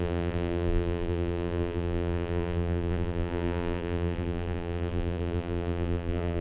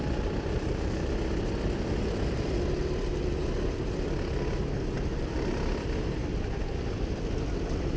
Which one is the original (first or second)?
second